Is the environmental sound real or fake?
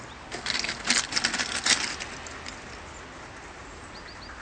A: real